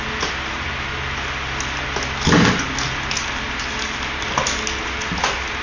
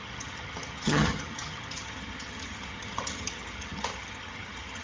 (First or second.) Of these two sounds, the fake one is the second